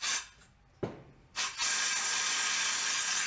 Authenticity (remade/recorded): recorded